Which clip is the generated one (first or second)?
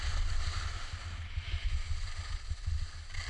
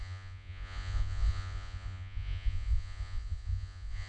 second